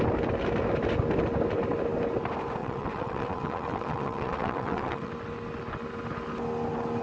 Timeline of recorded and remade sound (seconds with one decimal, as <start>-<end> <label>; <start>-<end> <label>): 0.0-2.6 recorded; 2.6-5.1 remade; 5.1-7.0 recorded